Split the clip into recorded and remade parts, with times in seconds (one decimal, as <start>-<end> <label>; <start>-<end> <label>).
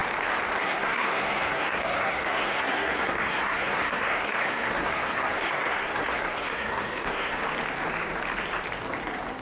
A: 0.0-0.6 recorded; 0.6-7.4 remade; 7.4-9.4 recorded